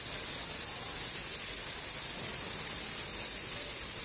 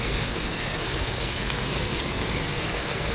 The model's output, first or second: second